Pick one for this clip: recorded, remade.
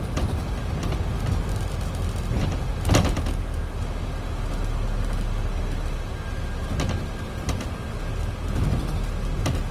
recorded